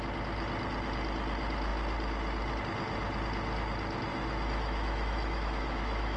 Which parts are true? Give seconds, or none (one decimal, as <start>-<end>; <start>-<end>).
0.0-4.1